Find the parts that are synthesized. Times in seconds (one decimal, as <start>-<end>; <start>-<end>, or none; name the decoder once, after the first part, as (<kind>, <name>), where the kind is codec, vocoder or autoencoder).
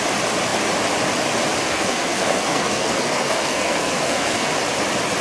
1.7-4.5 (codec, SNAC)